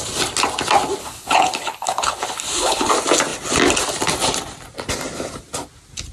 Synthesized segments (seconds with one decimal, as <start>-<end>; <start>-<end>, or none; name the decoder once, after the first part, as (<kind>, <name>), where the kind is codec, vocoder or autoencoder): 1.0-2.9 (codec, HILCodec)